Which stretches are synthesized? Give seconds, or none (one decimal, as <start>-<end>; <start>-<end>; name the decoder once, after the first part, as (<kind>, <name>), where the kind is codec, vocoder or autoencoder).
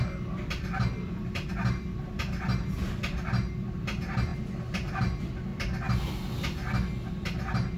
none